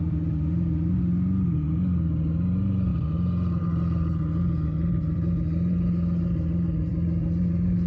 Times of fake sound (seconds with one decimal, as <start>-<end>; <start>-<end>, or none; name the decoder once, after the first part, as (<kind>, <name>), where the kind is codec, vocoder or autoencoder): none